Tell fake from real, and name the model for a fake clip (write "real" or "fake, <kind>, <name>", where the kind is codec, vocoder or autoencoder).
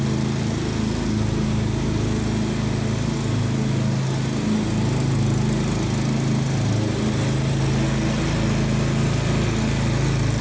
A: real